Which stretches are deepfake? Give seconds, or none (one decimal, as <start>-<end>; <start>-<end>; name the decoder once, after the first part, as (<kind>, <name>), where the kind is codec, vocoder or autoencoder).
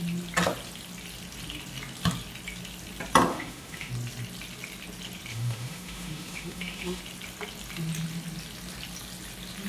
3.3-3.9 (autoencoder, DAC-VAE); 5.3-7.0